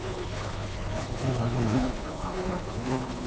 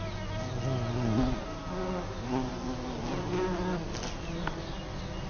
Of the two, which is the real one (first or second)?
second